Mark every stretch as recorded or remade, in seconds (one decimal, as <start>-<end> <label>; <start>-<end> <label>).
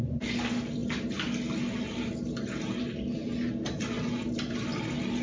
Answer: 0.0-5.2 recorded